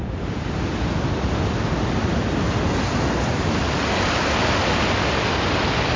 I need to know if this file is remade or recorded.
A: recorded